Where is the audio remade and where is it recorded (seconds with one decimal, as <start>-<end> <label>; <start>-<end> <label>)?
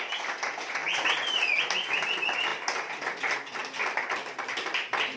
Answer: 0.0-0.8 recorded; 0.8-1.6 remade; 1.6-2.5 recorded; 2.5-3.2 remade; 3.2-3.6 recorded; 3.6-5.2 remade